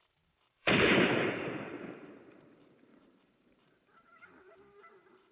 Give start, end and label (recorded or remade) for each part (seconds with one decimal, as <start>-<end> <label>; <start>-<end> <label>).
0.0-5.3 remade